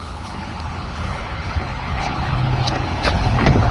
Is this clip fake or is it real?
fake